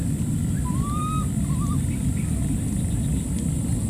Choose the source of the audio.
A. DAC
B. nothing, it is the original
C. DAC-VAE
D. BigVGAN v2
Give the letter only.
B